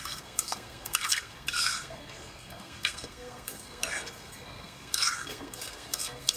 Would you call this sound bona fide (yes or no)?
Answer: no